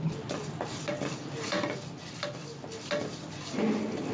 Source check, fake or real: real